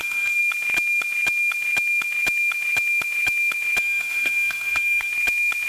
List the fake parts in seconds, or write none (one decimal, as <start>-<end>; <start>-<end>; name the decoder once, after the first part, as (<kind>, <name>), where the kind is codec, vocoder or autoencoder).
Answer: 0.0-0.4 (codec, SNAC); 3.8-5.1